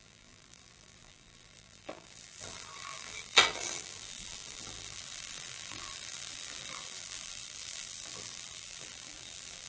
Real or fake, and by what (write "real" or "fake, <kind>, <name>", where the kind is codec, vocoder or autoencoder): fake, vocoder, BigVGAN v2